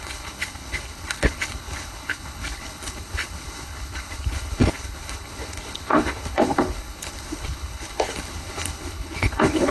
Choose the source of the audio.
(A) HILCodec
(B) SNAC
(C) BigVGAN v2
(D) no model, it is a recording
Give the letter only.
A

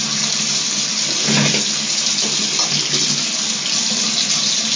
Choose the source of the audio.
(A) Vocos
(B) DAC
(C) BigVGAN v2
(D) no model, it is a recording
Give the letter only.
D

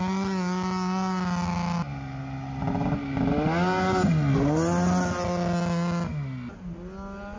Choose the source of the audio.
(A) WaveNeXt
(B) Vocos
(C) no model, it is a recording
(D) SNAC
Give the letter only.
C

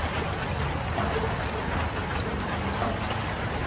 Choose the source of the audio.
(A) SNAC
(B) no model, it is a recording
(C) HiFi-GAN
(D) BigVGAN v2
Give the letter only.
B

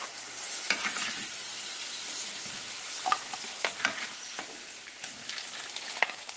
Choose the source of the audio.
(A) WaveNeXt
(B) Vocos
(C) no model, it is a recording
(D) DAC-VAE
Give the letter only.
C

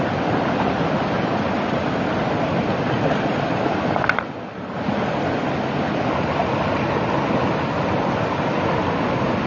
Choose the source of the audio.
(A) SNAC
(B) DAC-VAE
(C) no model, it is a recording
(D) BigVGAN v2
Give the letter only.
C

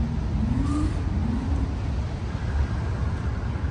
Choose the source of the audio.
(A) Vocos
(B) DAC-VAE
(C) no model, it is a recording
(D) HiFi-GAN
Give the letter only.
C